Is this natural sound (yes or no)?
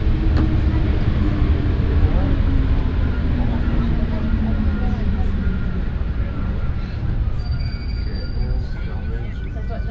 yes